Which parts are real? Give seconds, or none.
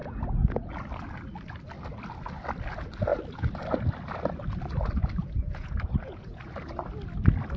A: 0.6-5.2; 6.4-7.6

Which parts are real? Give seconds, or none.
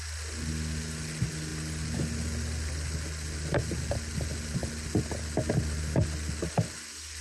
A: 0.0-7.2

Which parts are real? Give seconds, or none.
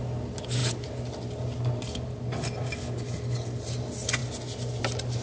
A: 0.0-5.2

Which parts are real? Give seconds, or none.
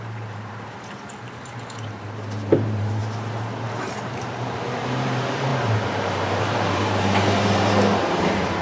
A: 3.0-3.8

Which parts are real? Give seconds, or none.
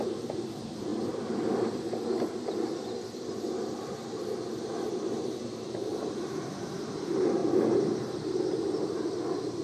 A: 0.0-5.9; 7.0-7.4; 9.2-9.6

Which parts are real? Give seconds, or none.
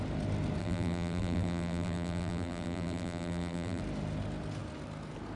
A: 0.0-0.6; 3.8-5.4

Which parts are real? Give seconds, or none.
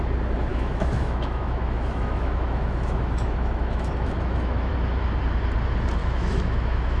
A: 0.0-0.5; 4.7-6.0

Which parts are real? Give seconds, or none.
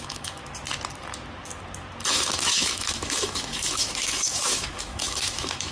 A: 0.4-2.1